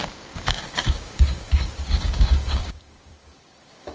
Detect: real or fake fake